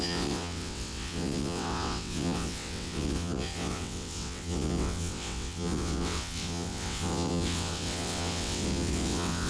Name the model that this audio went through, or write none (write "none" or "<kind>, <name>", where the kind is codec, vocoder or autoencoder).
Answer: vocoder, WaveNeXt